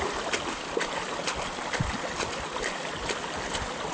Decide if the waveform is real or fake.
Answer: real